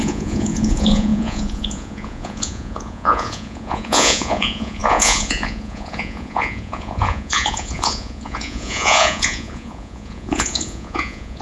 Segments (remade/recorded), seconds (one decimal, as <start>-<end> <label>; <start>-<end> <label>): 0.0-11.4 remade